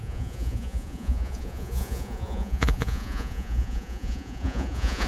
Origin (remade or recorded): remade